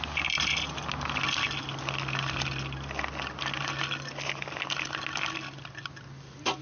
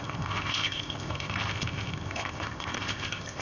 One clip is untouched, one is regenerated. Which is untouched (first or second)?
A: first